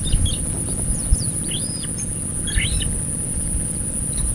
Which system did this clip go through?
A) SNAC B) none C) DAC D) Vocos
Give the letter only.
B